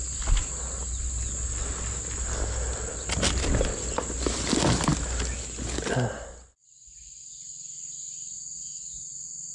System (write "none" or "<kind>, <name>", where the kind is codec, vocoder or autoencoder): none